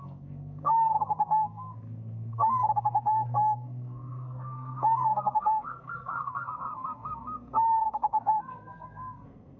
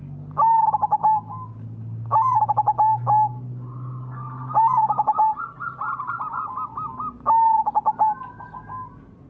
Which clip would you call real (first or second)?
second